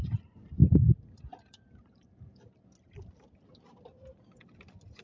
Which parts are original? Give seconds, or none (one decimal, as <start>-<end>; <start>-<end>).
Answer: 0.0-0.6; 2.5-5.0